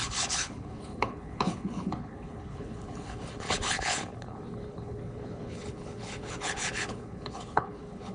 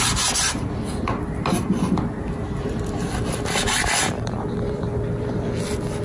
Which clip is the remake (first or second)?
first